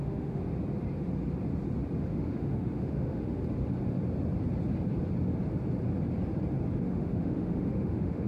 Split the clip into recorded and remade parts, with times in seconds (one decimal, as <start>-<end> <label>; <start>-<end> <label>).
0.0-0.4 remade; 0.4-2.0 recorded; 2.0-3.4 remade; 3.4-6.8 recorded; 6.8-8.3 remade

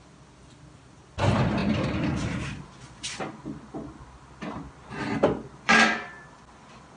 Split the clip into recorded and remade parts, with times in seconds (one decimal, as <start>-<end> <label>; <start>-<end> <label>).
0.0-7.0 remade